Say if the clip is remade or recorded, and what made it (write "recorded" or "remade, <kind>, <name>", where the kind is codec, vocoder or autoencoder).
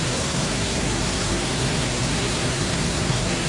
remade, codec, SNAC